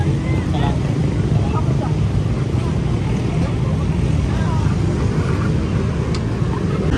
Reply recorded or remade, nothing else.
recorded